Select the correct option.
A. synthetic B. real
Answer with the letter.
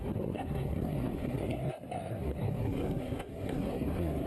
A